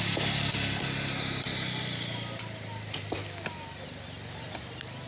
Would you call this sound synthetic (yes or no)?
no